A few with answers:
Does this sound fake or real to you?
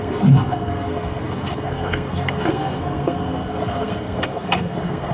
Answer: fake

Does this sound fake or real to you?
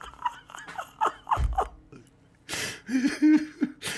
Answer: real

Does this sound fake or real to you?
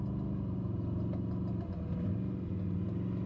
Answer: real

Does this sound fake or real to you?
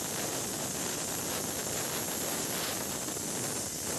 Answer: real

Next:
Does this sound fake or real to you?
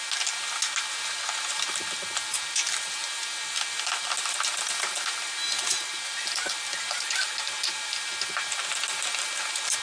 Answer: real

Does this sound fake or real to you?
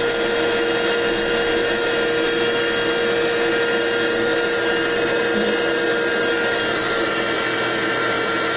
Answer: real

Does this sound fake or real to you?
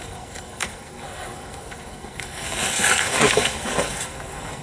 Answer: fake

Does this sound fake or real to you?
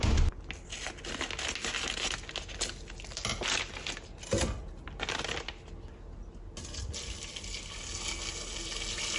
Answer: real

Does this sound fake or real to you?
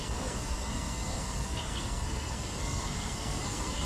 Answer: fake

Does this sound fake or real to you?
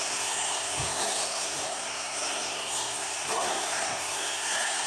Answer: fake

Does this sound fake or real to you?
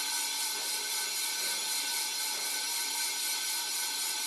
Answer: real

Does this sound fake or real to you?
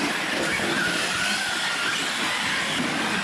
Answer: real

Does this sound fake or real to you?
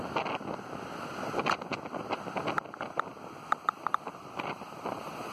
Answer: real